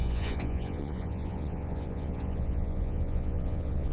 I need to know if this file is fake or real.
fake